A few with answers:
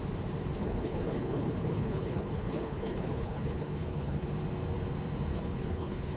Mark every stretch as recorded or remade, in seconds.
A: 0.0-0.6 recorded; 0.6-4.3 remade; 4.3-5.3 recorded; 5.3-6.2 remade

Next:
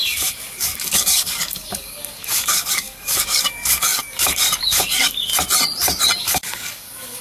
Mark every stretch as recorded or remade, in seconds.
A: 0.0-5.3 remade; 5.3-6.2 recorded; 6.2-7.2 remade